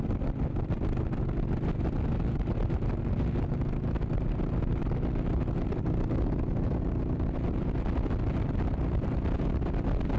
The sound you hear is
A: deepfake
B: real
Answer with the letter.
B